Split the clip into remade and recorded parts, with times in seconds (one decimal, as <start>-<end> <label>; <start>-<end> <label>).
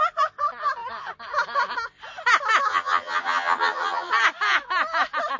0.0-2.7 recorded; 2.7-4.1 remade; 4.1-5.4 recorded